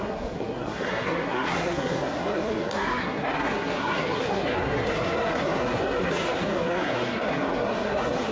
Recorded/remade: remade